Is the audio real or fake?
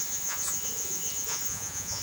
fake